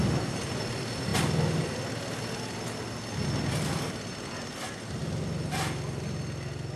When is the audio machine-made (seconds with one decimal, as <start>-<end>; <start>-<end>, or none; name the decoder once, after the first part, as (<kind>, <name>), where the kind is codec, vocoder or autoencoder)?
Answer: none